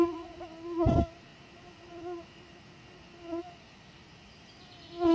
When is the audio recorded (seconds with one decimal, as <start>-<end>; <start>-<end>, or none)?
1.3-4.4